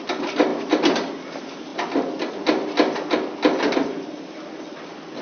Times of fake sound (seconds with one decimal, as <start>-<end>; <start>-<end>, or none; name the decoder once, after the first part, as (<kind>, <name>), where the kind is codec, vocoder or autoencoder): none